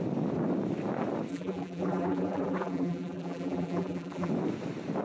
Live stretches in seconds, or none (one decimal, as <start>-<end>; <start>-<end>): 0.0-1.3; 4.3-5.0